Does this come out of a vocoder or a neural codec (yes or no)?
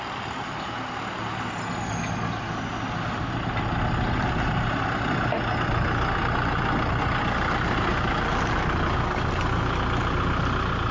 no